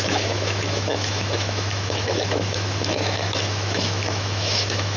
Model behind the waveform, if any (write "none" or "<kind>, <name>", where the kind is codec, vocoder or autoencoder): autoencoder, DAC-VAE